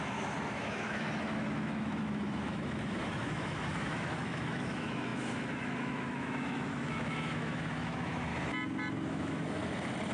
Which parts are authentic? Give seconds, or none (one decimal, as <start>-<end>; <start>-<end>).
8.3-9.1; 9.6-10.1